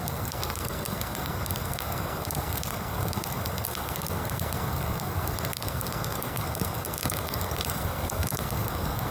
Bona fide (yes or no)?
no